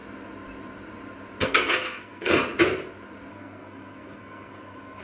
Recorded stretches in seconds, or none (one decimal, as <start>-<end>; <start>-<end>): 0.0-1.4; 2.4-3.3